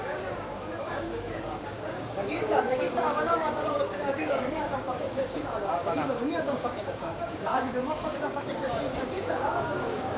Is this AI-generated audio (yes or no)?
yes